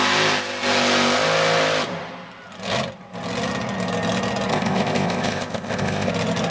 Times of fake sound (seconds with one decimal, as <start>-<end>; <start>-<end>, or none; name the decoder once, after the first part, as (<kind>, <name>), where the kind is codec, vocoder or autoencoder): 4.5-6.1 (codec, ZipCodec)